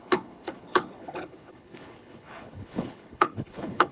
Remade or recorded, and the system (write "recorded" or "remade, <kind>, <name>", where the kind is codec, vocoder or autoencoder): remade, codec, HILCodec